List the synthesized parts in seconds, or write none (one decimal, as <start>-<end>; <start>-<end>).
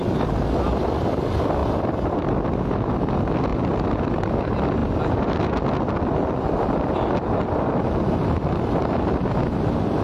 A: 1.6-2.5; 3.5-4.2